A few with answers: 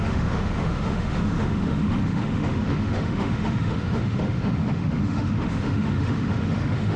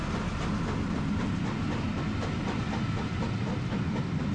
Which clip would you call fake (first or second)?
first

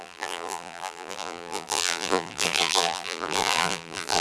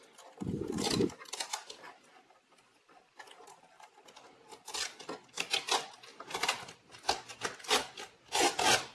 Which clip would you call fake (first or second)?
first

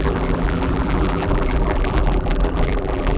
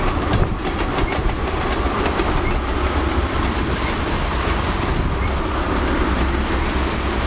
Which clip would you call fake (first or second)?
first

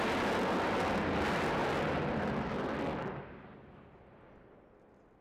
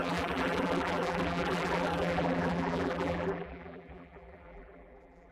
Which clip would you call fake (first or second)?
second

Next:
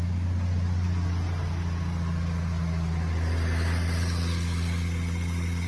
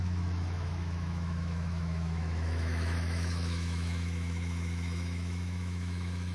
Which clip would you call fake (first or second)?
second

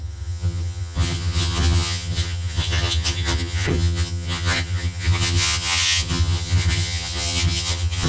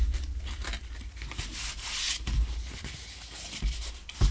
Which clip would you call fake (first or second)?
first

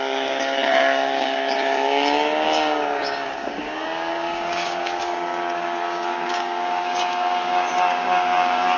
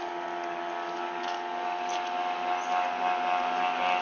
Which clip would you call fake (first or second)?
first